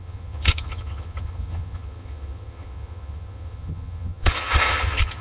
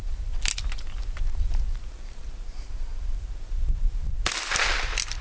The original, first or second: second